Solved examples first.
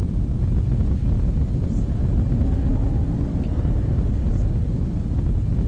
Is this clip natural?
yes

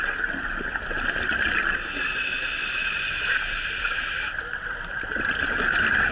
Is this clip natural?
yes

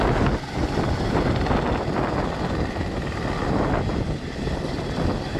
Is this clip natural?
yes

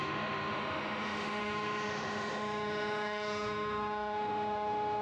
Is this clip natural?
no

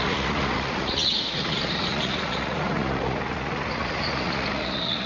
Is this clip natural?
no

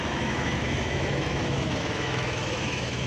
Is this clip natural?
no